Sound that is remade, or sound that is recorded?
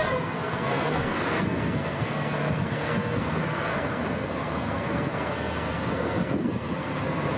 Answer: remade